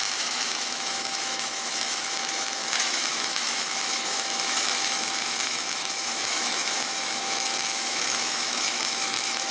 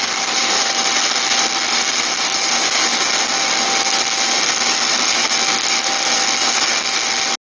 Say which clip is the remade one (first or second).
first